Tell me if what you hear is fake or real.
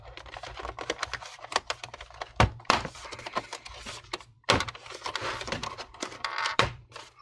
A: fake